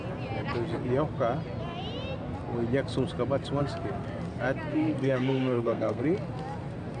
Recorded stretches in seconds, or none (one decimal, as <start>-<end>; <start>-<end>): 0.0-4.7; 6.0-7.0